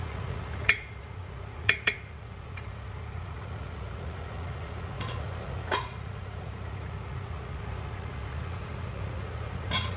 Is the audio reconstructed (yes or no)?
yes